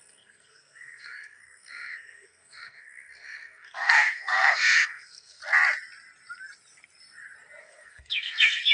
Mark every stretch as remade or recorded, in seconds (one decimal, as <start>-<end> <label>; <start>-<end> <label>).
0.0-5.4 remade; 5.4-7.6 recorded; 7.6-8.7 remade